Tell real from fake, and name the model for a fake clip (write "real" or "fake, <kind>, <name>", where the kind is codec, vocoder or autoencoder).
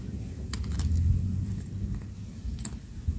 real